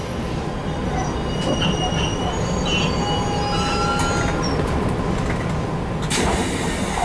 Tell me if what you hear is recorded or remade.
recorded